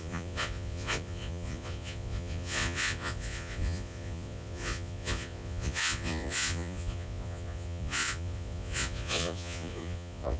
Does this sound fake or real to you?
fake